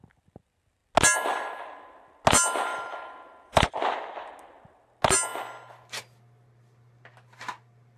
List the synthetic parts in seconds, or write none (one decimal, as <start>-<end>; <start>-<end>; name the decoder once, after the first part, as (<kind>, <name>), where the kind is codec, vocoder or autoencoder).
2.7-3.8 (vocoder, BigVGAN v2)